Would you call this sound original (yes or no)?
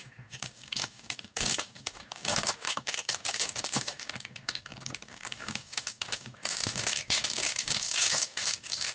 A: no